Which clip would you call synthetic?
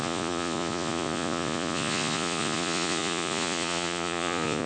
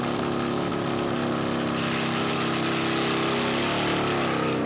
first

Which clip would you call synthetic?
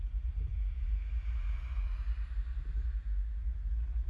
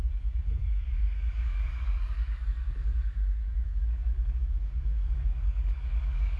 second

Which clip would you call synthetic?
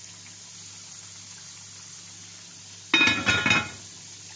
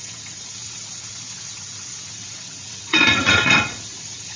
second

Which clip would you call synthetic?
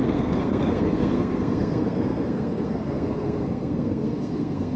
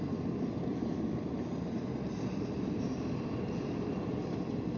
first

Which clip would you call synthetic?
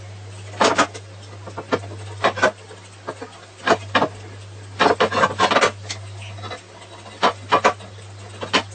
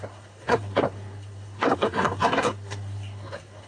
second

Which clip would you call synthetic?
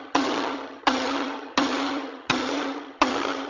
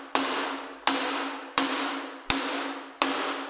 first